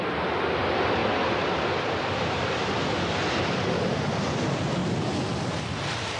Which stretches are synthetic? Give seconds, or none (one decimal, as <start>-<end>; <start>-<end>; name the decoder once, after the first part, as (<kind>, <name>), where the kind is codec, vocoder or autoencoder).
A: 0.0-1.0 (vocoder, BigVGAN v2); 2.2-4.8; 5.5-6.2